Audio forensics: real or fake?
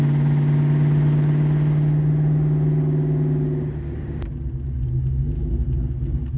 real